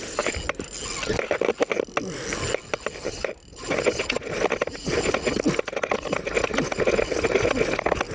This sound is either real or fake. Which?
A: real